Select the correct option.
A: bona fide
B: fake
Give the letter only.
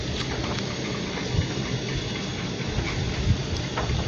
A